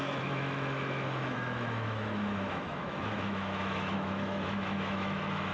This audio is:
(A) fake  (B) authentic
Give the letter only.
A